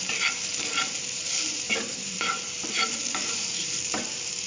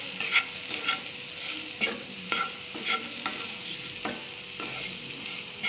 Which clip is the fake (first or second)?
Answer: first